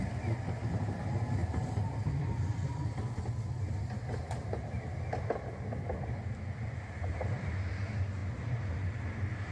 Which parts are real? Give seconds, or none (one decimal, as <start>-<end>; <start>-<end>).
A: 0.0-1.4; 1.9-9.5